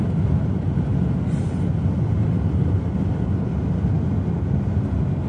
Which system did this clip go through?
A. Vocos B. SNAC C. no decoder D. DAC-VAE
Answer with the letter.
C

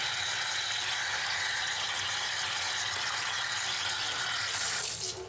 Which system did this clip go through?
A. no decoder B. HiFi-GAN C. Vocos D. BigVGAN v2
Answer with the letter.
A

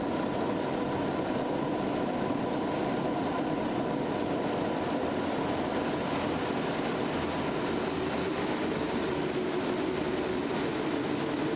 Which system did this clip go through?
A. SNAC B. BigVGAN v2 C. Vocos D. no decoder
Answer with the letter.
B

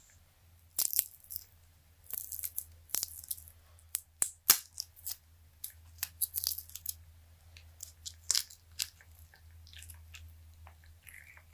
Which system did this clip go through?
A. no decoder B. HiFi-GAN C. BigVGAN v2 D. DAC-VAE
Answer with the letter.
A